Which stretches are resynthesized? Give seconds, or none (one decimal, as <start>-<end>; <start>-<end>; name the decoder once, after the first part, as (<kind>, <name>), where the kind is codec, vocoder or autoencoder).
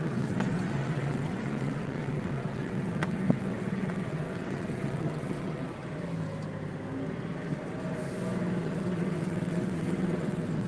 0.0-5.8 (vocoder, WaveNeXt); 8.6-10.7